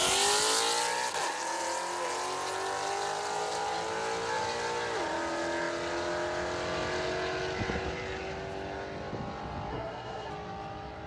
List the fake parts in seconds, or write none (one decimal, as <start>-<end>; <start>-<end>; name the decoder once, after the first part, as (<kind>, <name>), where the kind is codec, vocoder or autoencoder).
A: 9.7-10.3 (codec, SNAC)

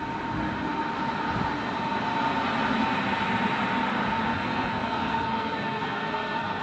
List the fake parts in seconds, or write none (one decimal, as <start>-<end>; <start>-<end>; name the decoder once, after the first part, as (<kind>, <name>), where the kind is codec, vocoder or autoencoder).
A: 4.3-6.6 (codec, SNAC)

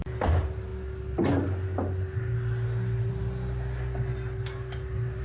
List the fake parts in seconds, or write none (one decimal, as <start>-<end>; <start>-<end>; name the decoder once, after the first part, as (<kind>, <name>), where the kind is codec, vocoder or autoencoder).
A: none

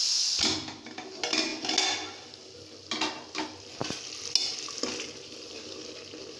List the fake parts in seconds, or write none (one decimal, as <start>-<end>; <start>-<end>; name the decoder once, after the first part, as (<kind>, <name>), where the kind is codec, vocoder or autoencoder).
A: none

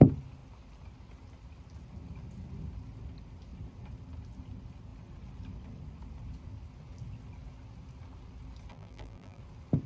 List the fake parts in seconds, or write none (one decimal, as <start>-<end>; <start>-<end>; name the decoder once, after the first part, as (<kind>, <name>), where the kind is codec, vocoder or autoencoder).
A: 8.7-9.4 (vocoder, BigVGAN v2)